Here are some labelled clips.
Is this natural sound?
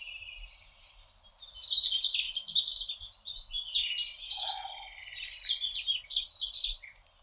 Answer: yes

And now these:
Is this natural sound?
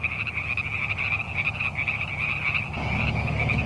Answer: yes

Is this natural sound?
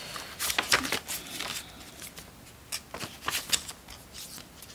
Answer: yes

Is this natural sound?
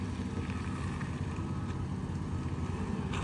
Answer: yes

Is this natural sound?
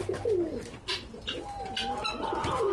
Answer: yes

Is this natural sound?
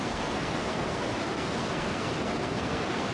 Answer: no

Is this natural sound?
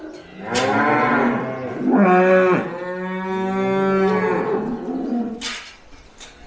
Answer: yes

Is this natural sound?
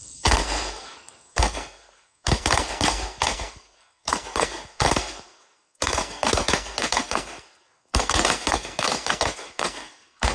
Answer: no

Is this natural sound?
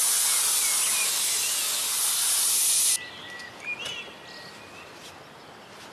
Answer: yes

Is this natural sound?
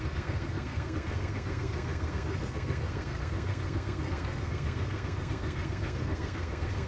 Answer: no